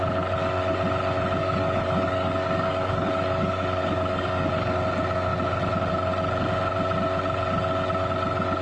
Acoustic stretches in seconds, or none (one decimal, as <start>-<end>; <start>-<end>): 0.0-1.4; 4.5-8.6